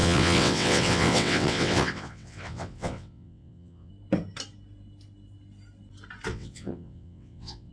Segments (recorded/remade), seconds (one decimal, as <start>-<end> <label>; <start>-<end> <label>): 0.0-3.9 remade; 3.9-6.3 recorded; 6.3-7.7 remade